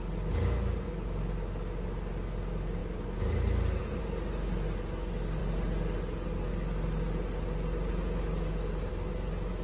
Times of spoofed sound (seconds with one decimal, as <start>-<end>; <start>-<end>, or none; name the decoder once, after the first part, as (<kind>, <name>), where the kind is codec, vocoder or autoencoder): none